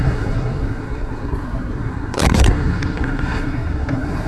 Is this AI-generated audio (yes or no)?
yes